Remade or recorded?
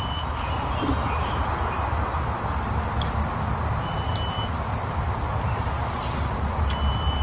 recorded